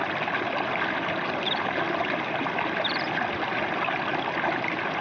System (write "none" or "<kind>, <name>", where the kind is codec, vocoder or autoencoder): none